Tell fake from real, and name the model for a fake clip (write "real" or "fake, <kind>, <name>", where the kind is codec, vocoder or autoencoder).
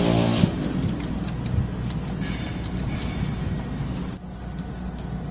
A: real